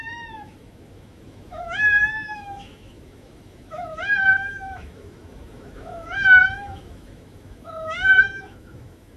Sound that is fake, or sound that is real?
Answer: fake